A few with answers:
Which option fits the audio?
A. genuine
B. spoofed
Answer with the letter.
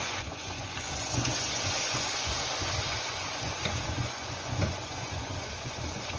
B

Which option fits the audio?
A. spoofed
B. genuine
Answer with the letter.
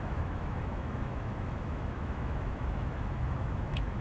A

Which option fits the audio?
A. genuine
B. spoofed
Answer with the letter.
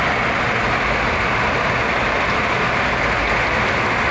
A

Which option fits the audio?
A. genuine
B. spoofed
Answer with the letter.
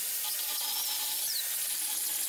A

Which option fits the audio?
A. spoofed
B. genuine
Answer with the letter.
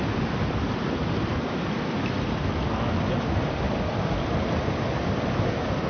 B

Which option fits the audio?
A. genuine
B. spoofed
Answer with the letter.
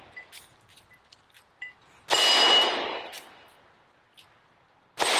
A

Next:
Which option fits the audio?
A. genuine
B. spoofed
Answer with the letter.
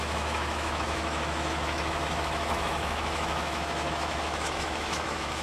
B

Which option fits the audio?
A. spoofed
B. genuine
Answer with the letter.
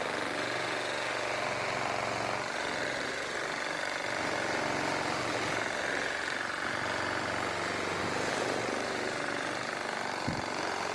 A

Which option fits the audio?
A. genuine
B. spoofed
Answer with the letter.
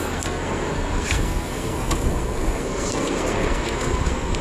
B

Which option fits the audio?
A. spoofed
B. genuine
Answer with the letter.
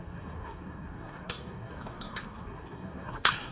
A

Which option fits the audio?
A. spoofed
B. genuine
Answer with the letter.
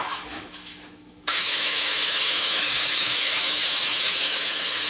A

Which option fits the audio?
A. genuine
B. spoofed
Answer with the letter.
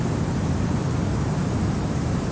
A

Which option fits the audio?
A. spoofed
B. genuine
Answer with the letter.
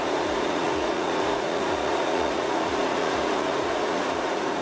A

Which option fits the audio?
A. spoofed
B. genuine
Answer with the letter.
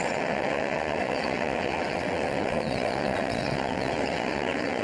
A